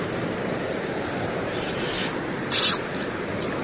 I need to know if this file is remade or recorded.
recorded